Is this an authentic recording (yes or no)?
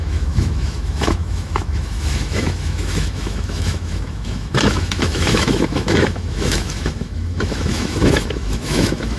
no